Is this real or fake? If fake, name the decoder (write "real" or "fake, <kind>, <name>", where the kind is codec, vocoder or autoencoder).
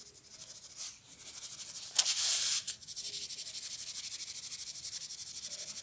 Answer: real